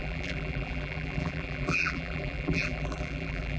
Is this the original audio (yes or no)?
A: no